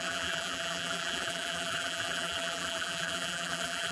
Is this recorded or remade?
remade